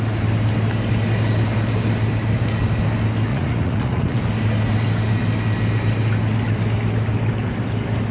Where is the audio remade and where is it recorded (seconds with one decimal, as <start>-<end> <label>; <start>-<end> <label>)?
0.0-3.3 recorded; 3.3-4.2 remade; 4.2-8.1 recorded